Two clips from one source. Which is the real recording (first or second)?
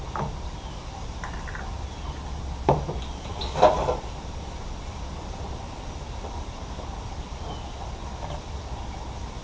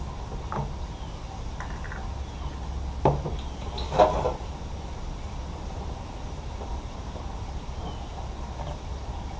second